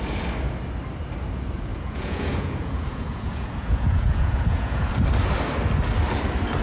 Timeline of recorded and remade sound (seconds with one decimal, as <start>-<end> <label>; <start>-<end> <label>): 0.0-1.7 recorded; 1.7-4.9 remade; 4.9-6.6 recorded